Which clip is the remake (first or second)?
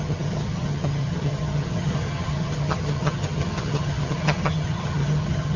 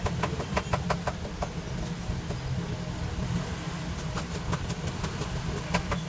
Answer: first